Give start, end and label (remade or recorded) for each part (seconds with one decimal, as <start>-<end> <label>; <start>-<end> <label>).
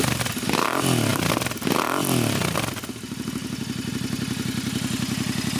0.0-5.6 recorded